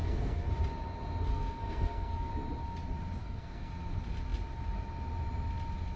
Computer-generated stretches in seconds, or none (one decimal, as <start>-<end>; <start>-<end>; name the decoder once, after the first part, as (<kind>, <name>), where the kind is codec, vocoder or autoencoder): 0.0-0.5 (codec, SNAC); 1.3-2.3; 3.2-3.7